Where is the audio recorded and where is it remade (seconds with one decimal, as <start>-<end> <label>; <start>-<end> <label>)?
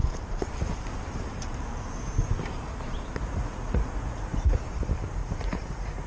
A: 0.0-3.2 recorded; 3.2-4.6 remade; 4.6-5.2 recorded; 5.2-6.1 remade